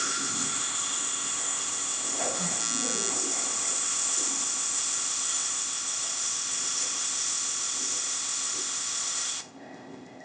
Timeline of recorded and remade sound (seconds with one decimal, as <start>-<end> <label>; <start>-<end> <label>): 0.0-2.6 remade; 2.6-3.1 recorded; 3.1-10.2 remade